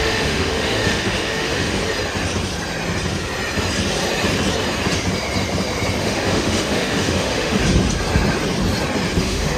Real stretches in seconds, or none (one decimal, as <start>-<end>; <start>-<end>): 1.8-6.0; 7.6-9.2